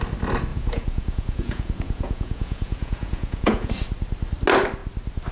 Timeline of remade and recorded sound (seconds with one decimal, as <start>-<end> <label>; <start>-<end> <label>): 0.0-0.5 recorded; 0.5-3.7 remade; 3.7-5.3 recorded